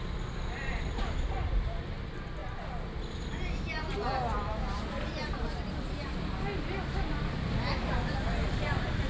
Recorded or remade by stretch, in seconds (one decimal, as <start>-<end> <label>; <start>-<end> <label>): 0.0-9.1 recorded